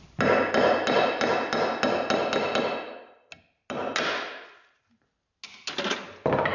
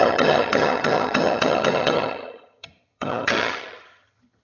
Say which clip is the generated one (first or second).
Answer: second